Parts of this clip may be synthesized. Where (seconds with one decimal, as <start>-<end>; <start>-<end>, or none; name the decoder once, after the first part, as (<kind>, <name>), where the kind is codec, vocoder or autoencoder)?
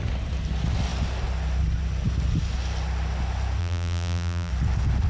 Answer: 3.6-4.5 (vocoder, BigVGAN v2)